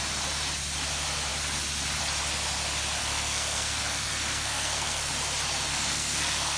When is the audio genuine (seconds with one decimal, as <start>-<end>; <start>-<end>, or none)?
0.0-3.0; 5.1-5.7